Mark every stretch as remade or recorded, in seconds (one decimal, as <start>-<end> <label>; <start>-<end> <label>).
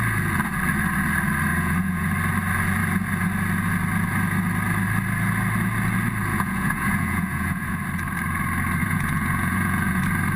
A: 0.0-1.5 recorded; 1.5-2.1 remade; 2.1-6.3 recorded; 6.3-7.8 remade; 7.8-8.8 recorded; 8.8-10.0 remade; 10.0-10.4 recorded